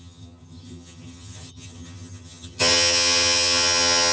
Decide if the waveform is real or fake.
fake